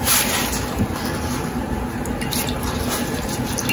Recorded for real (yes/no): yes